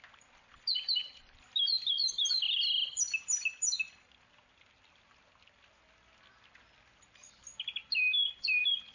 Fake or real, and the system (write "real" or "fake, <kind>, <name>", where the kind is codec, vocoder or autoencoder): real